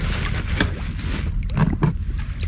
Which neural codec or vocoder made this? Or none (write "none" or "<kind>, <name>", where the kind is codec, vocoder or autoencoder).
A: none